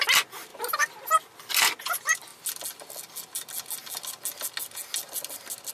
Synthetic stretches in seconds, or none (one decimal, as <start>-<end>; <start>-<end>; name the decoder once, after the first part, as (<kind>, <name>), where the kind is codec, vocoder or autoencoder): 0.5-1.2 (vocoder, BigVGAN v2)